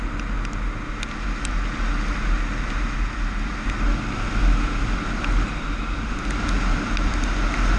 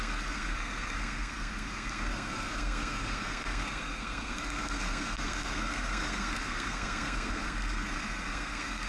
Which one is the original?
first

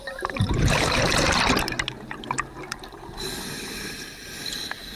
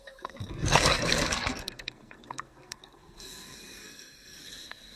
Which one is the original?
first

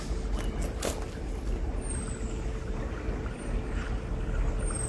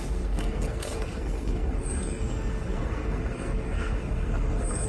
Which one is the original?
first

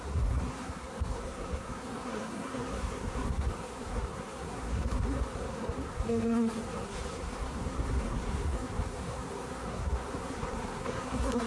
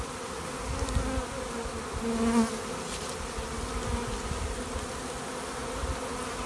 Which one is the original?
second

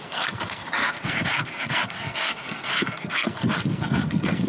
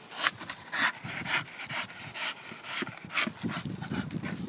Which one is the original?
second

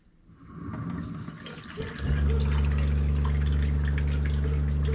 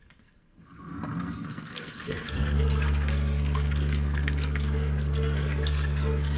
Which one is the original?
first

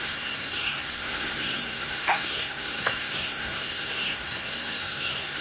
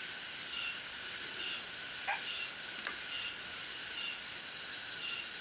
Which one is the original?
second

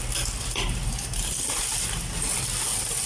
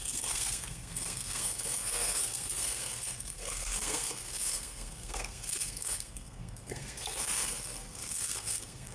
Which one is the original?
first